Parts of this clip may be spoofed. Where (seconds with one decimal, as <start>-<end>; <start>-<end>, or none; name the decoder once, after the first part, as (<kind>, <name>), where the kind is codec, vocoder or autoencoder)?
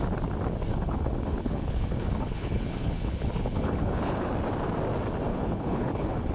0.7-4.3 (codec, HILCodec); 5.3-6.3